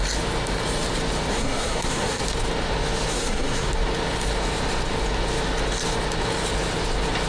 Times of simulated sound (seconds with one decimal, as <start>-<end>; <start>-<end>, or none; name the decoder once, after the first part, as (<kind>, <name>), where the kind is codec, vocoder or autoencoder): 1.3-2.2 (codec, SNAC); 3.1-3.7